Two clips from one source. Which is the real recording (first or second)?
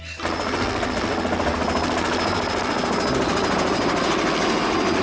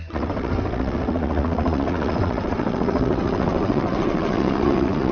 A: first